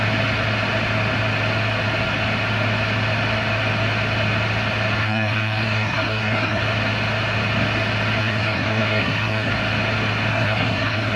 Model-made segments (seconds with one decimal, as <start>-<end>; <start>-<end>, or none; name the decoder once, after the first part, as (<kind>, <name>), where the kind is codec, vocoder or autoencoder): 5.0-6.6 (codec, SNAC); 8.2-9.5; 10.3-11.2